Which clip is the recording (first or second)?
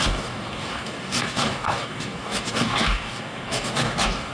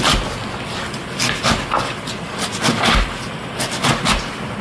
second